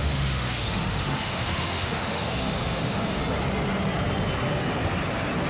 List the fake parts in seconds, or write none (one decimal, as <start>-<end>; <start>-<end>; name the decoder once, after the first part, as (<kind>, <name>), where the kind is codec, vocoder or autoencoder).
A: 0.0-3.2 (autoencoder, DAC-VAE)